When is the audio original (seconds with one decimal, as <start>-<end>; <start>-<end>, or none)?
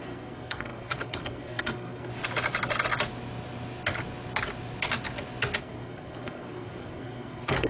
2.1-5.6